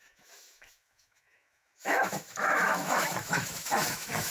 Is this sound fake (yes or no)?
yes